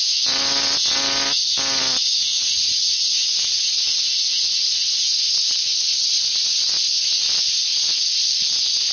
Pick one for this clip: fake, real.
real